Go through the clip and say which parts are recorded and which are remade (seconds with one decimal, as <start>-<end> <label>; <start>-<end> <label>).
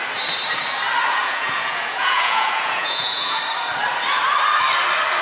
0.0-1.2 recorded; 1.2-3.4 remade; 3.4-5.2 recorded